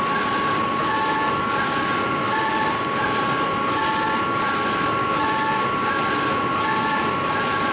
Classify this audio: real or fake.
real